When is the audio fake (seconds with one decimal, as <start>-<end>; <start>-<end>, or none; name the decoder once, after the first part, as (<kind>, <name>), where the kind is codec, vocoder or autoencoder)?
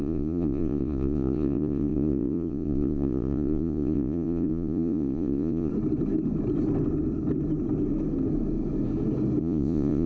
0.0-5.7 (vocoder, Vocos); 9.4-10.1